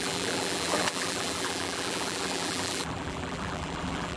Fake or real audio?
fake